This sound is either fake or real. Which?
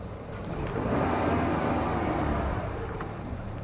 fake